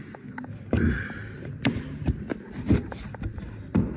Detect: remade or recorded recorded